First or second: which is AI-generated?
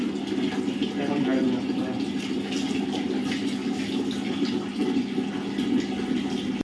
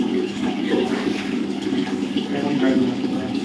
second